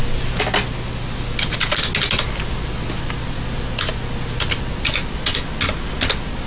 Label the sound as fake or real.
real